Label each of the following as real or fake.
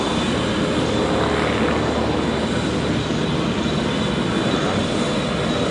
real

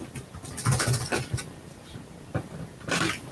real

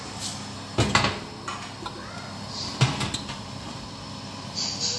real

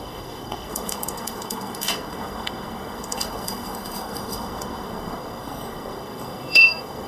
fake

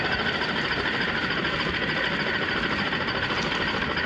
real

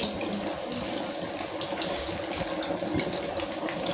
real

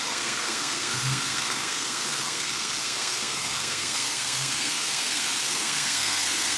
fake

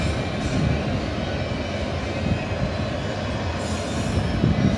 real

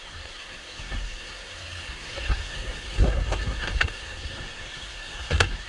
fake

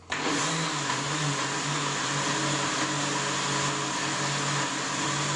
real